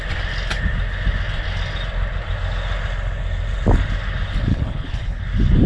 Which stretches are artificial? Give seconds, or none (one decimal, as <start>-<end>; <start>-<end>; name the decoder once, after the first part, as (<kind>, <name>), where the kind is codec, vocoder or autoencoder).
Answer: 4.5-5.2 (codec, HILCodec)